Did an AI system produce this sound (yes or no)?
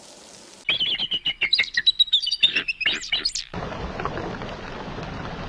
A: no